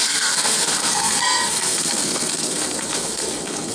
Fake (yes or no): yes